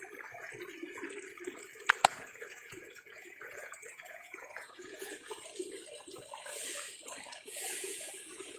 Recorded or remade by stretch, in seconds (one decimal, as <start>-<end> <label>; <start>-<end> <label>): 0.0-2.1 recorded; 2.1-5.3 remade; 5.3-7.3 recorded; 7.3-8.6 remade